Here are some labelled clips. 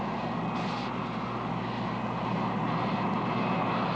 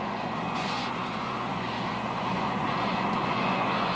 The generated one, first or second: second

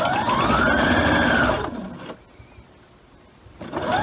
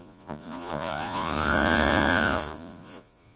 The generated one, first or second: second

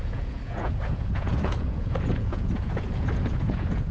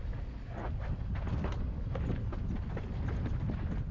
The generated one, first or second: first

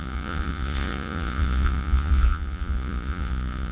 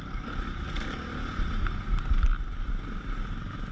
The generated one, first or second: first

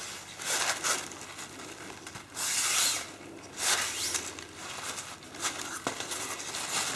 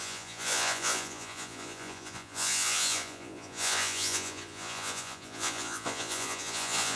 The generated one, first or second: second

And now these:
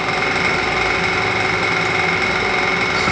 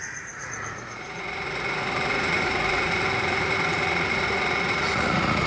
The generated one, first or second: second